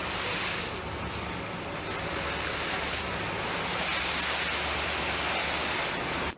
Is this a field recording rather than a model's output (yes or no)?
yes